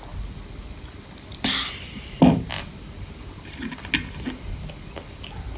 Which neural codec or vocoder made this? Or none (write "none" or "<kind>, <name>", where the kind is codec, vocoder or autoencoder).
none